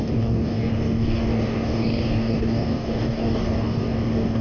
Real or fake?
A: fake